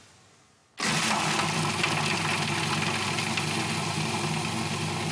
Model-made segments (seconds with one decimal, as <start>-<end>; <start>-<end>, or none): none